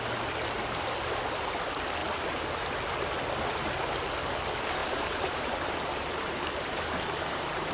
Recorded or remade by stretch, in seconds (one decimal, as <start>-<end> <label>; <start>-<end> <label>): 0.0-4.8 recorded; 4.8-7.7 remade